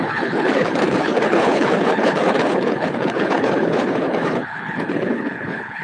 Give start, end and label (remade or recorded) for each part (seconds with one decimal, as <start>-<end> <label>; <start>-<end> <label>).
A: 0.0-5.8 remade